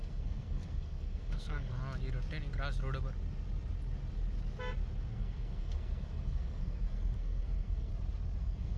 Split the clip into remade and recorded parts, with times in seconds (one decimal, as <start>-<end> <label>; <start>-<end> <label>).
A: 0.0-1.8 remade; 1.8-5.1 recorded; 5.1-7.9 remade; 7.9-8.4 recorded; 8.4-8.8 remade